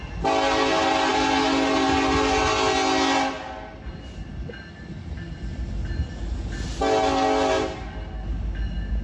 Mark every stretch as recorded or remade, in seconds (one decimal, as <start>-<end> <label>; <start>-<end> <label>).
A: 0.0-9.0 recorded